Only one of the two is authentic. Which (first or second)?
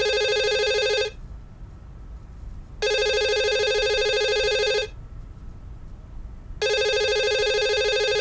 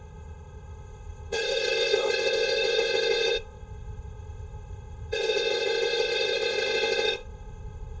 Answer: first